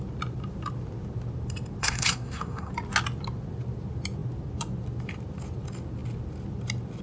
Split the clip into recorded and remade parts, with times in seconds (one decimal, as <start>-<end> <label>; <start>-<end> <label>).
0.0-1.8 recorded; 1.8-2.7 remade; 2.7-7.0 recorded